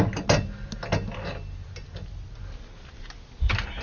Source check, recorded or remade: recorded